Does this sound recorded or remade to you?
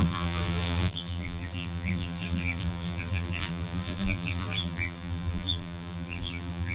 remade